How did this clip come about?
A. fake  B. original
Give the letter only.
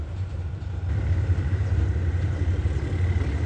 B